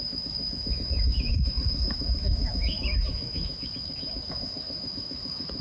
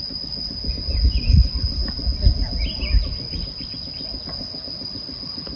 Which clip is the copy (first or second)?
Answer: first